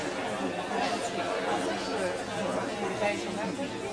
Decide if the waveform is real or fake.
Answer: real